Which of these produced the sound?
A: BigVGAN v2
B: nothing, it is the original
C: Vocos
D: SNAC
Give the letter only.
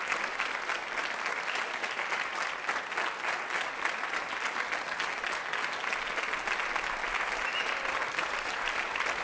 B